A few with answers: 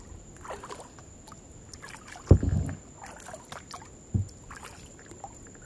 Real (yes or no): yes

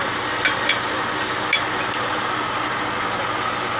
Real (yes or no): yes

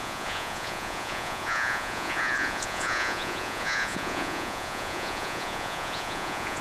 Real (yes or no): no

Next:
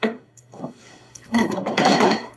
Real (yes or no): no